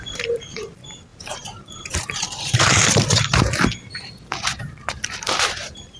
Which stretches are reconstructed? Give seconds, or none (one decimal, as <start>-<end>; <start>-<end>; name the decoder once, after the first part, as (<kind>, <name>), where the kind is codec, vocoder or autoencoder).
0.0-6.0 (vocoder, BigVGAN v2)